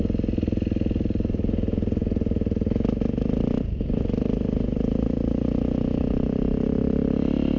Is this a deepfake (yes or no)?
no